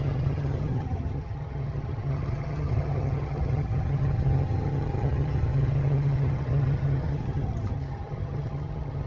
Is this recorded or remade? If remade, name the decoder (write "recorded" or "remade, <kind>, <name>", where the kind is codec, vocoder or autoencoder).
remade, vocoder, HiFi-GAN